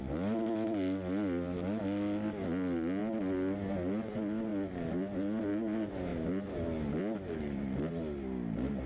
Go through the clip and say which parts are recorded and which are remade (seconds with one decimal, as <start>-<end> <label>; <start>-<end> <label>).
0.0-8.9 recorded